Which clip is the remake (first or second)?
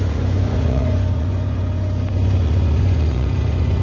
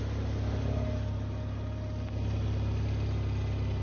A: first